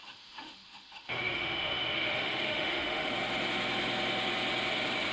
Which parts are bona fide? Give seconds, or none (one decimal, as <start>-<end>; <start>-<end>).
3.1-5.1